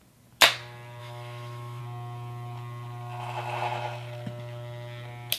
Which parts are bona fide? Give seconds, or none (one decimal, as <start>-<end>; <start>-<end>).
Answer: 0.0-1.0; 1.8-5.4